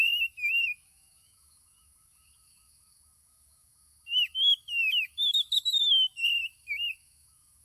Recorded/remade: remade